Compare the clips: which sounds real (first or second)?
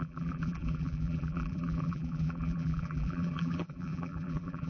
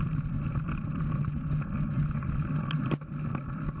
second